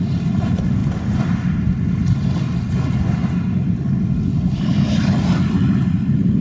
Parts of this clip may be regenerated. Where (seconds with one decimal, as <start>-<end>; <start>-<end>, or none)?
none